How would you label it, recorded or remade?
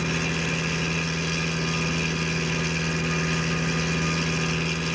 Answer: recorded